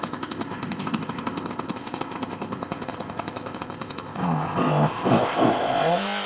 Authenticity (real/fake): fake